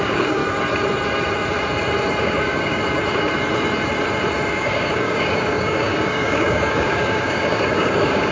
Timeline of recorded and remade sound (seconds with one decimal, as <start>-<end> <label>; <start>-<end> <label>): 0.0-0.4 remade; 0.4-2.2 recorded; 2.2-2.8 remade; 2.8-4.5 recorded; 4.5-8.3 remade

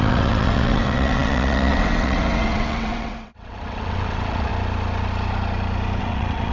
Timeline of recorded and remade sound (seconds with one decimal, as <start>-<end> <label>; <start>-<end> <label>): 0.0-4.5 remade; 4.5-6.0 recorded; 6.0-6.5 remade

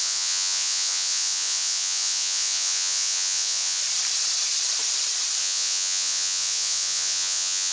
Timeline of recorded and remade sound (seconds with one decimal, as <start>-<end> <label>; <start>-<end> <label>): 0.0-3.8 remade; 3.8-5.4 recorded; 5.4-7.7 remade

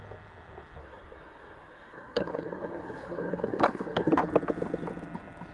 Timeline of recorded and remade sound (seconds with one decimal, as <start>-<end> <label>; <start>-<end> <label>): 0.0-0.8 recorded; 0.8-4.1 remade; 4.1-5.5 recorded

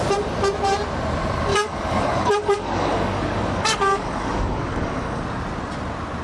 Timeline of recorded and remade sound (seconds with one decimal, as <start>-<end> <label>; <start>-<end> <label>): 0.0-1.5 recorded; 1.5-5.2 remade; 5.2-6.2 recorded

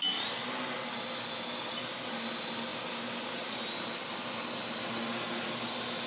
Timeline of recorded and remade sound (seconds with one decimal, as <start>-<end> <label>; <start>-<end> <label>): 0.0-6.1 recorded

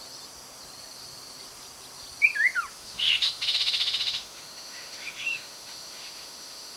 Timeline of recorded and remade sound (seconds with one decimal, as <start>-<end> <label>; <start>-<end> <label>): 0.0-2.7 recorded; 2.7-6.8 remade

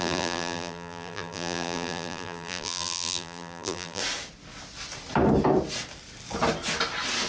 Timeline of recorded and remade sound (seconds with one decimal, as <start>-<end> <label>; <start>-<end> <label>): 0.0-4.0 remade; 4.0-7.3 recorded